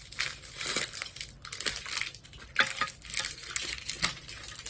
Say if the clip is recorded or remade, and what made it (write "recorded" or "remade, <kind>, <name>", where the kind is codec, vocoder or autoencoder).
recorded